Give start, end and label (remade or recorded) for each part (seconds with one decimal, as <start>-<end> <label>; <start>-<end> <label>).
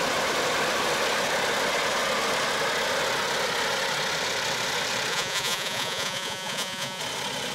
0.0-5.1 recorded; 5.1-7.0 remade; 7.0-7.5 recorded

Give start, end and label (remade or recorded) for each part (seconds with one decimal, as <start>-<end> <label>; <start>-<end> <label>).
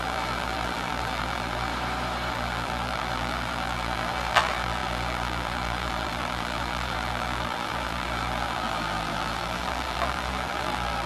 0.0-1.7 remade; 1.7-2.3 recorded; 2.3-11.1 remade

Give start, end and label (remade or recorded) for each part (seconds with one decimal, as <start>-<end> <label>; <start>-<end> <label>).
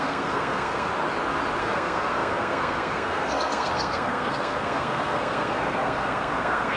0.0-0.9 remade; 0.9-1.6 recorded; 1.6-6.8 remade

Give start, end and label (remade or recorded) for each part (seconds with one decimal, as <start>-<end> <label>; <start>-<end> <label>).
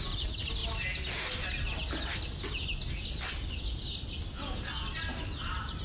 0.0-5.8 recorded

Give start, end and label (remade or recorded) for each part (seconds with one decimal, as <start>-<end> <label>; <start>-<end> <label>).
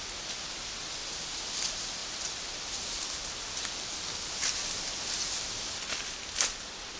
0.0-2.0 recorded; 2.0-3.0 remade; 3.0-7.0 recorded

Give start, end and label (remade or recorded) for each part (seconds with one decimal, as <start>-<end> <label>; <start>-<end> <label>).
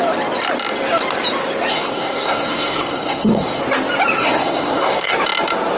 0.0-1.7 recorded; 1.7-3.6 remade; 3.6-4.2 recorded; 4.2-5.1 remade; 5.1-5.8 recorded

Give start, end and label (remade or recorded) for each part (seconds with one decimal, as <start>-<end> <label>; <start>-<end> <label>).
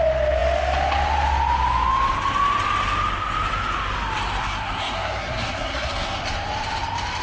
0.0-4.4 recorded; 4.4-6.2 remade; 6.2-7.2 recorded